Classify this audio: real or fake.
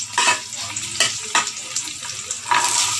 real